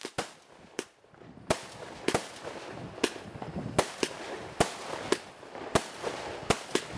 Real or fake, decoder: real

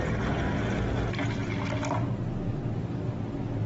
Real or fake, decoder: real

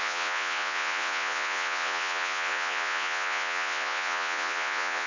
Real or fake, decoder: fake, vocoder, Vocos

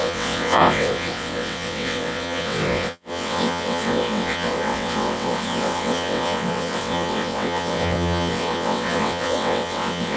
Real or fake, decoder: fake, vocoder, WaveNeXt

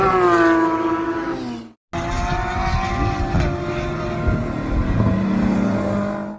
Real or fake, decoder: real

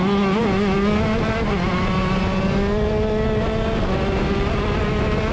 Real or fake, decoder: real